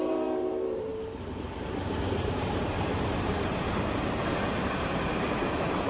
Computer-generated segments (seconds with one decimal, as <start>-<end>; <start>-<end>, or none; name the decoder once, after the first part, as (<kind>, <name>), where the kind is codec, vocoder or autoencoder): 0.0-5.9 (vocoder, BigVGAN v2)